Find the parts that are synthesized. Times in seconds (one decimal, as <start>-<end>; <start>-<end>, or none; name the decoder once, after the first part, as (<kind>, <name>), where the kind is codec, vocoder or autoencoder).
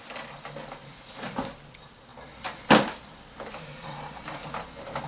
none